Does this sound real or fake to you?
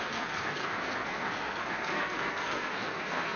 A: fake